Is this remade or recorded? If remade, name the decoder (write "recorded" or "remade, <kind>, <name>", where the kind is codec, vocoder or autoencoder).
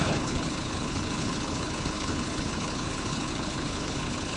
remade, codec, HILCodec